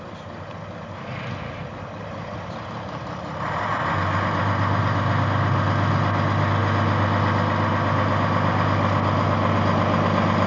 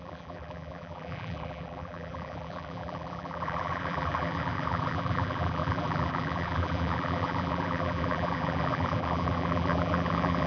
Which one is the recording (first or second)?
first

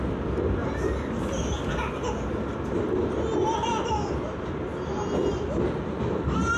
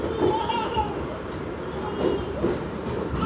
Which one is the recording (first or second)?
first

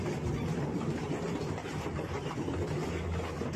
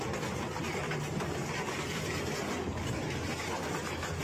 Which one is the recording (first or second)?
second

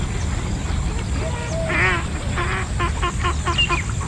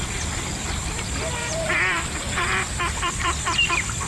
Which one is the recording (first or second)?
first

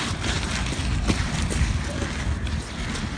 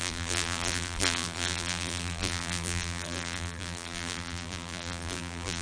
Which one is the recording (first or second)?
first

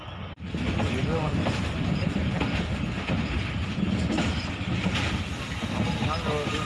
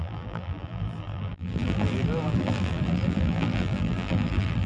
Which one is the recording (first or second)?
first